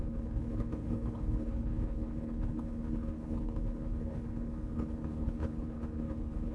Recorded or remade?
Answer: remade